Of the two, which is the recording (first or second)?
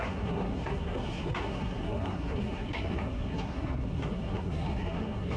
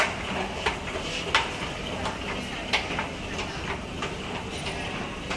second